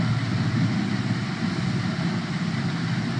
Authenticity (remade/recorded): recorded